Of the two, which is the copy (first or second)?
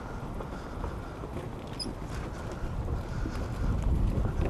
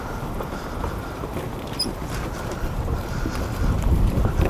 second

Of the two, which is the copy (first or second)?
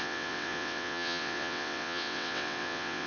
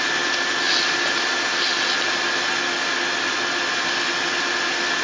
first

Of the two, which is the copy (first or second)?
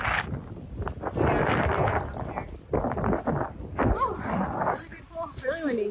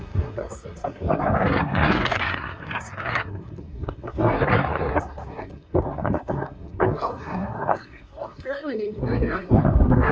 second